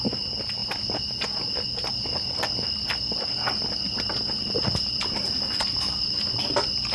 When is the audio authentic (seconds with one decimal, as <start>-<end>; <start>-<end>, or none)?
0.0-6.9